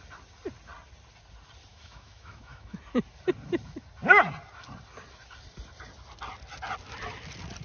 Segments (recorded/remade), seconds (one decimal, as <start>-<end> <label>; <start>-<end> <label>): 0.0-1.7 recorded; 1.7-2.8 remade; 2.8-7.6 recorded